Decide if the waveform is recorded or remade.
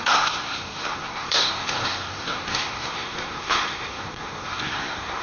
remade